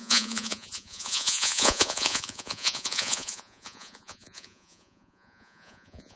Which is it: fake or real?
fake